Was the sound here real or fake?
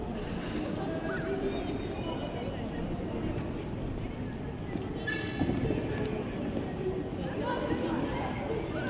real